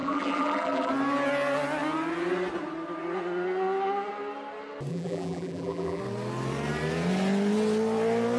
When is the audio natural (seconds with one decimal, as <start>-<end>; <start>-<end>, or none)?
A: 0.9-4.9; 6.0-8.4